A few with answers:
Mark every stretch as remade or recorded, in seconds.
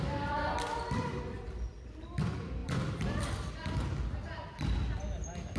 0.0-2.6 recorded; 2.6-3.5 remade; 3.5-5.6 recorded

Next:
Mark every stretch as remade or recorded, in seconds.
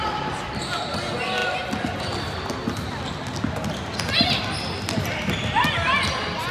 0.0-6.5 recorded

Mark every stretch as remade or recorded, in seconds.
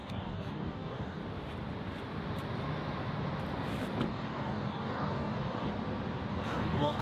0.0-1.2 remade; 1.2-4.1 recorded; 4.1-5.7 remade; 5.7-6.3 recorded; 6.3-7.0 remade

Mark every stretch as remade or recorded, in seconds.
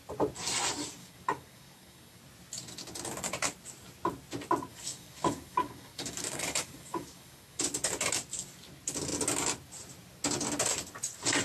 0.0-1.0 recorded; 1.0-2.2 remade; 2.2-4.7 recorded; 4.7-7.6 remade; 7.6-11.4 recorded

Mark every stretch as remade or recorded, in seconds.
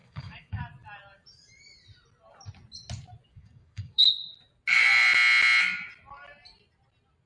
0.0-0.6 remade; 0.6-3.3 recorded; 3.3-4.1 remade; 4.1-7.3 recorded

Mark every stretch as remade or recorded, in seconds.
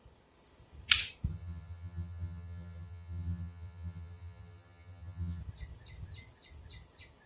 0.0-1.3 recorded; 1.3-5.4 remade; 5.4-7.3 recorded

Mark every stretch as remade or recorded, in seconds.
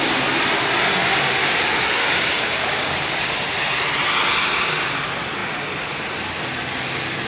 0.0-1.4 recorded; 1.4-3.2 remade; 3.2-7.3 recorded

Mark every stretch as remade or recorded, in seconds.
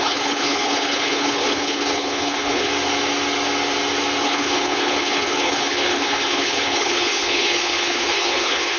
0.0-2.7 remade; 2.7-4.2 recorded; 4.2-8.8 remade